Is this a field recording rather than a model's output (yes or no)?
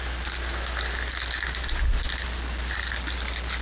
yes